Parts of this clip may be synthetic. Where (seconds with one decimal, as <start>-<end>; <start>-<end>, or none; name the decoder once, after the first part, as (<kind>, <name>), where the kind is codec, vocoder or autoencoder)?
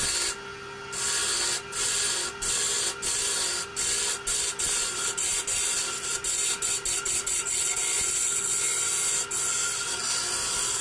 none